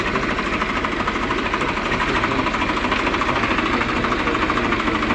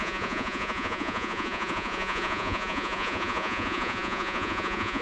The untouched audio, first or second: first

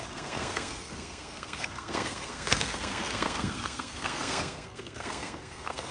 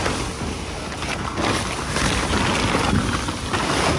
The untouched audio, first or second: second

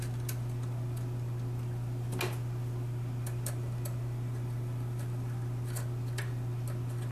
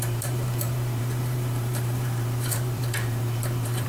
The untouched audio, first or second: first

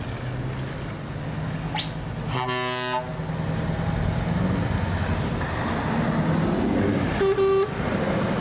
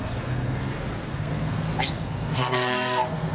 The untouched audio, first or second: first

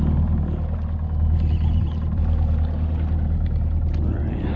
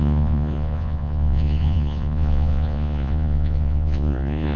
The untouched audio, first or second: first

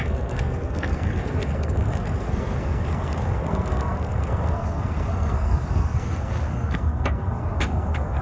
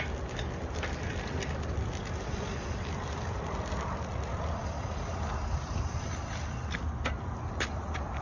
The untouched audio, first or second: second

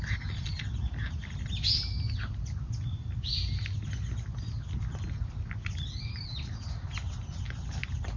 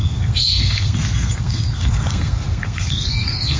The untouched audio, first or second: first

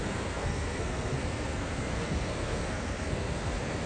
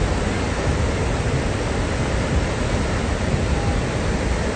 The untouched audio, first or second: second